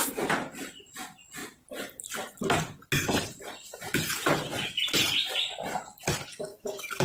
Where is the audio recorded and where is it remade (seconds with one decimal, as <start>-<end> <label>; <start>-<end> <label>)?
0.0-6.3 recorded; 6.3-7.0 remade